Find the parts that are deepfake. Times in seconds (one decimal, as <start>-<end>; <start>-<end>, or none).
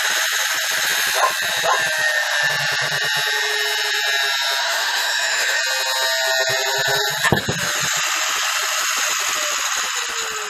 4.6-5.6